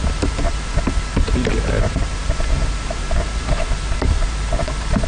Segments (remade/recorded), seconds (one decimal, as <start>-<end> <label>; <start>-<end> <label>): 0.0-1.1 remade; 1.1-1.8 recorded; 1.8-5.1 remade